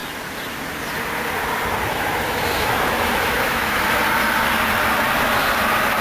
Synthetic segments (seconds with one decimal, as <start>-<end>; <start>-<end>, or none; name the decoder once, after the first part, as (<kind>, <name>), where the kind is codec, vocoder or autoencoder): 1.9-4.0 (autoencoder, DAC-VAE)